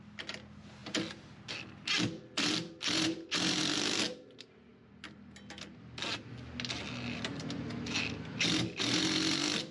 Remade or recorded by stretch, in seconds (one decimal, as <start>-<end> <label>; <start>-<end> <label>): 0.0-9.7 recorded